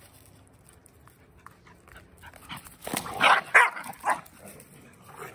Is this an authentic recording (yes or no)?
yes